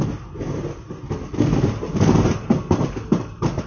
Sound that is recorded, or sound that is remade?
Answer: recorded